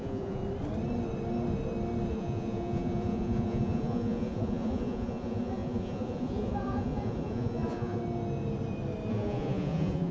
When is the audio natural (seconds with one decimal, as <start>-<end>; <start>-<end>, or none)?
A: 0.4-2.1; 8.0-9.1